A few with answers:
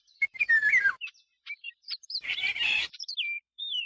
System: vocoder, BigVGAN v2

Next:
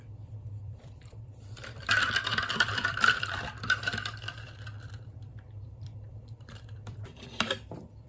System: vocoder, BigVGAN v2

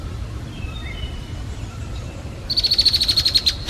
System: vocoder, BigVGAN v2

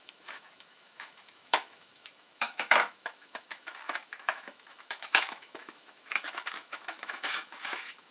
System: autoencoder, DAC-VAE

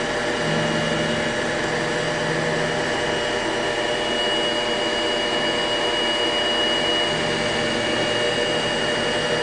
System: none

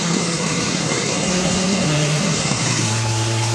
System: codec, SNAC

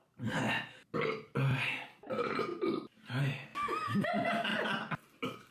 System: none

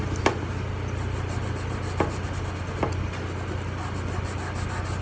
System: none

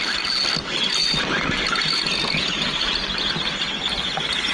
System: none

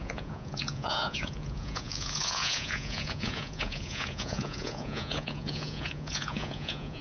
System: vocoder, Vocos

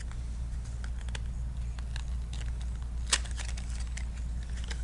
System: none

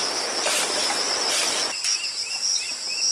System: none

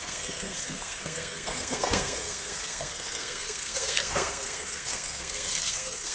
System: codec, SNAC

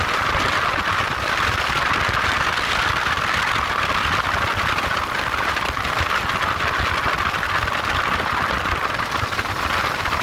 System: none